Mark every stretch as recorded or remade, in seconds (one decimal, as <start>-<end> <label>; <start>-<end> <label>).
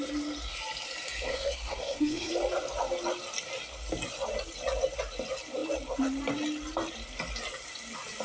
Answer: 0.0-1.3 recorded; 1.3-2.3 remade; 2.3-8.2 recorded